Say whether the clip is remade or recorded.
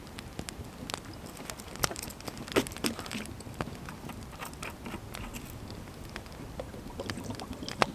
recorded